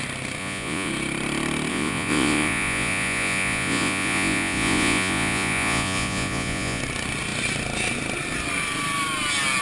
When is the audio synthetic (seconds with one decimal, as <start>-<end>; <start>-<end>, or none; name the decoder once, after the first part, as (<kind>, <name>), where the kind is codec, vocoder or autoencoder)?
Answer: 0.4-0.9 (vocoder, Vocos); 1.7-6.8